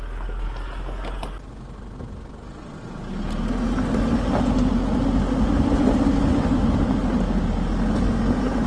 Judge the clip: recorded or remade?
recorded